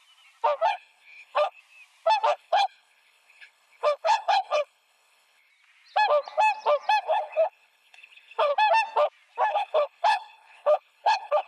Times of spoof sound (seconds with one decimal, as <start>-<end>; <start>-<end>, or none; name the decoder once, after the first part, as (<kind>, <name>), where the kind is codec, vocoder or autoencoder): 0.7-1.6 (codec, HILCodec); 2.3-5.5; 7.0-8.5; 9.5-11.5